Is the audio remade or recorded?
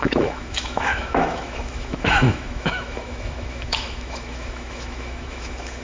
remade